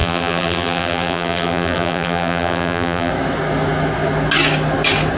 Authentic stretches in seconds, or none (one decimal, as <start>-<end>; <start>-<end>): 3.1-5.2